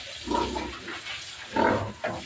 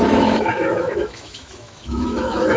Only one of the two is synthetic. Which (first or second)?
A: second